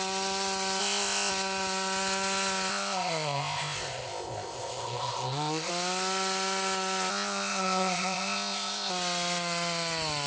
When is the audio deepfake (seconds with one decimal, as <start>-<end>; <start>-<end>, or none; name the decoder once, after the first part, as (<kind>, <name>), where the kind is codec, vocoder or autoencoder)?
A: 0.8-1.3 (codec, ZipCodec); 2.7-5.7; 7.1-8.9

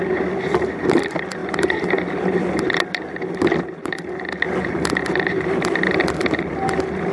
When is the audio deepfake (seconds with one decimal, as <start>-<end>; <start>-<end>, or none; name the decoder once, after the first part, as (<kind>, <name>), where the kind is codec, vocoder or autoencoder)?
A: none